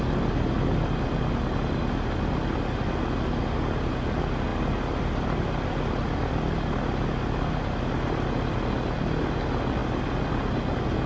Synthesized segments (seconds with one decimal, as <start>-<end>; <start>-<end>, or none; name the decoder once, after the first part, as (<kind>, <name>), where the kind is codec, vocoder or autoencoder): none